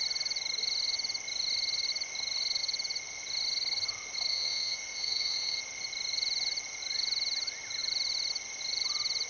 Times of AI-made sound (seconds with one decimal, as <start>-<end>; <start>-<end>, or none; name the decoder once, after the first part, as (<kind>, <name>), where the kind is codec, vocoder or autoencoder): 4.3-5.6 (autoencoder, DAC-VAE)